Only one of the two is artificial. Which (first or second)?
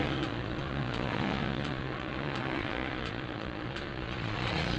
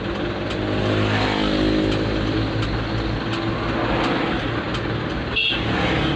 first